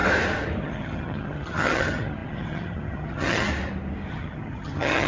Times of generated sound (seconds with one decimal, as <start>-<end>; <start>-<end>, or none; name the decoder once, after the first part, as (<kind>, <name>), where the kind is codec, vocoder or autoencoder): 0.6-3.5 (vocoder, HiFi-GAN); 4.1-5.1